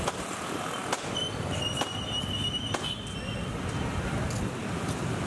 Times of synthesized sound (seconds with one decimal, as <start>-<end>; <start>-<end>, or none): 0.0-0.8; 3.5-5.3